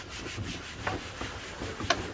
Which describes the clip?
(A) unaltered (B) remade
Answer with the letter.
A